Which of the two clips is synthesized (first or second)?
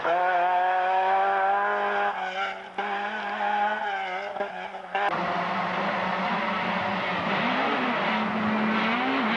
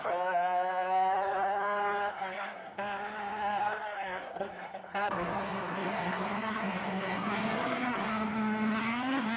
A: second